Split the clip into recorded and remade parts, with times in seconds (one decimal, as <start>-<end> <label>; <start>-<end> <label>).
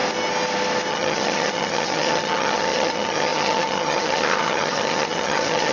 0.0-0.9 recorded; 0.9-5.7 remade